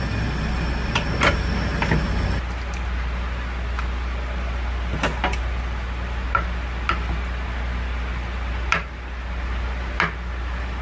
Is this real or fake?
real